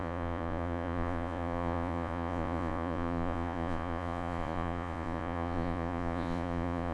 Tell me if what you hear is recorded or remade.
remade